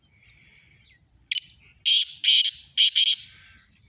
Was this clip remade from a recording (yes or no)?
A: no